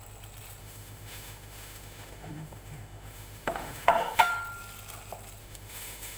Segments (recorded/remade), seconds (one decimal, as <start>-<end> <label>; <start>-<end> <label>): 0.0-0.6 recorded; 0.6-4.3 remade; 4.3-5.4 recorded; 5.4-6.2 remade